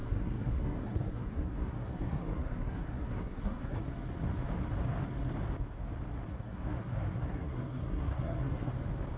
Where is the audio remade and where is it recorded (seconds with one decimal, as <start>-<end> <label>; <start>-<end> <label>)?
0.0-3.8 remade; 3.8-6.3 recorded; 6.3-8.7 remade; 8.7-9.2 recorded